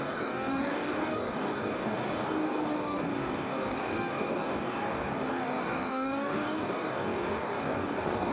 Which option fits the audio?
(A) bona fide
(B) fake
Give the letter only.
B